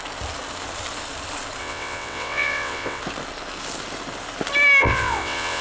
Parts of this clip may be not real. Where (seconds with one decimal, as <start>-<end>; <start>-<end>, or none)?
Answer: 1.6-3.0; 4.8-5.6